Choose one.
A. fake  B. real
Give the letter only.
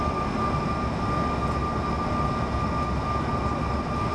B